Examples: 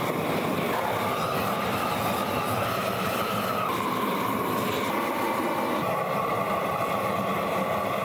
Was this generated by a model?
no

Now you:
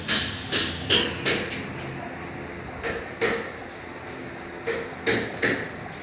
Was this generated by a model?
no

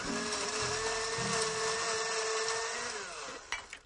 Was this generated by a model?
no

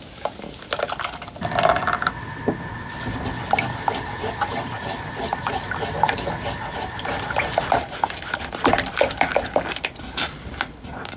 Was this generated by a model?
no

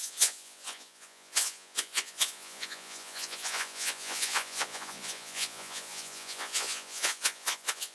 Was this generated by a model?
yes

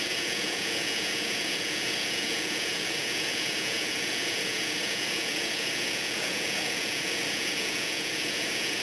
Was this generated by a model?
yes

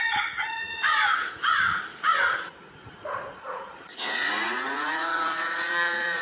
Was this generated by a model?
yes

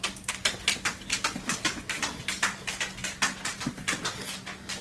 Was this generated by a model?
no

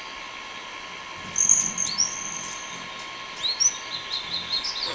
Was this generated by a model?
no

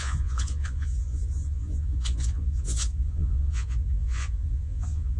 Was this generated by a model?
yes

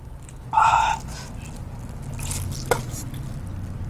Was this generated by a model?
no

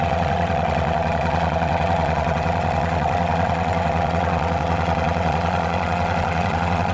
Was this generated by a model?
yes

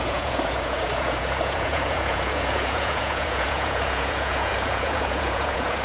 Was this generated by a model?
yes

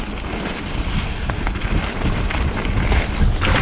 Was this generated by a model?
no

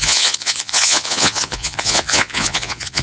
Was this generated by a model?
yes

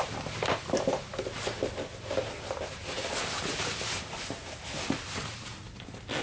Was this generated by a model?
no